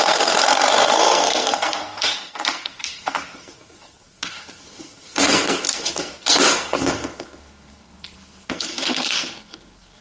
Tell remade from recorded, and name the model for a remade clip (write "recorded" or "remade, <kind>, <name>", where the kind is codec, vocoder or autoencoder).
remade, codec, SNAC